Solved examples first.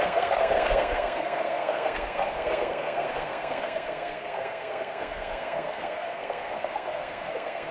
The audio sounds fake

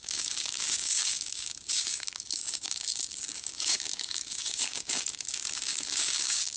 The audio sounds fake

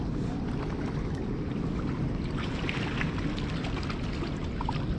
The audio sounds real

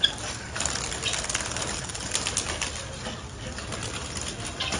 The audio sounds real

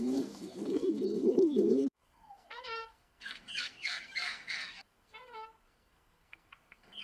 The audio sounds fake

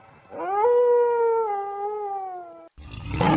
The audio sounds real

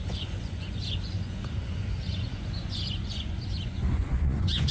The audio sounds fake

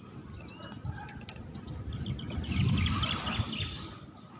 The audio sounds real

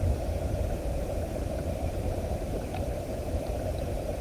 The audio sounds fake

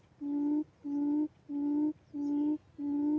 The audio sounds real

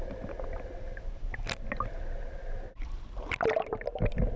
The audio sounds real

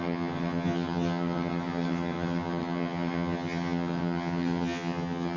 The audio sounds fake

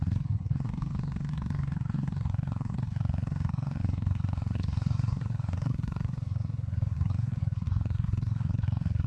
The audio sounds fake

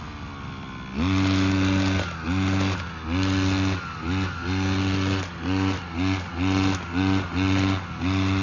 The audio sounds real